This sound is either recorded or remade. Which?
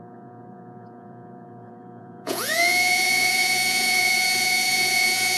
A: remade